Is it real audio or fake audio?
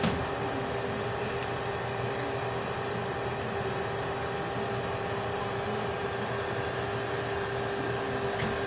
real